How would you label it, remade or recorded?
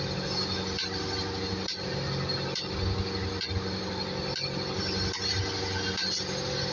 recorded